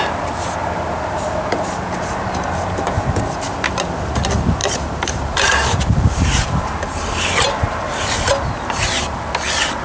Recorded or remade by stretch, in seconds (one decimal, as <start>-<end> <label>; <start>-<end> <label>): 0.0-0.6 recorded; 0.6-3.2 remade; 3.2-4.6 recorded; 4.6-6.7 remade; 6.7-9.8 recorded